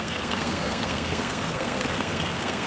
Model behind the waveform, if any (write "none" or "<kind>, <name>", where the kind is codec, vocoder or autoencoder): codec, SNAC